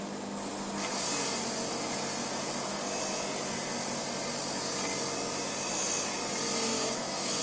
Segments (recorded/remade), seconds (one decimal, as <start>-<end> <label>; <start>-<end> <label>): 0.0-6.7 recorded; 6.7-7.4 remade